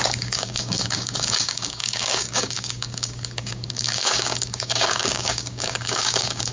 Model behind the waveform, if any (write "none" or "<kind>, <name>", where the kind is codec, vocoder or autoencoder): codec, DAC